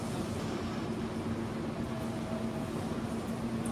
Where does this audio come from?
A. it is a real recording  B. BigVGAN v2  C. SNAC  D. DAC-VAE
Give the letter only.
A